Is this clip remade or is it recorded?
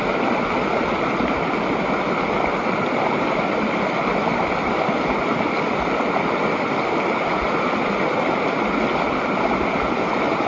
recorded